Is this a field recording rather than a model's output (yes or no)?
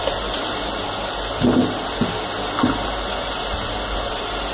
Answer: yes